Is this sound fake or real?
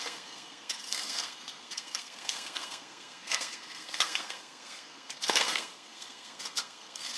fake